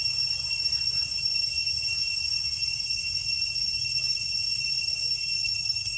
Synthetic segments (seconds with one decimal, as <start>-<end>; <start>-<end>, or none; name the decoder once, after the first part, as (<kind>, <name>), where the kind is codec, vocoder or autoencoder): 5.4-6.0 (codec, SNAC)